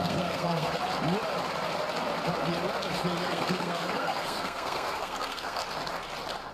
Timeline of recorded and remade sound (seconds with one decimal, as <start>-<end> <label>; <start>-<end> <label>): 0.0-0.7 remade; 0.7-3.2 recorded; 3.2-5.6 remade; 5.6-6.5 recorded